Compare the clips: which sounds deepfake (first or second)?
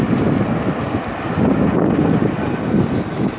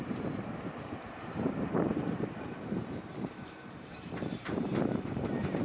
second